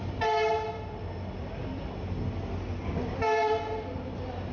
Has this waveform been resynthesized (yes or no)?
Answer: no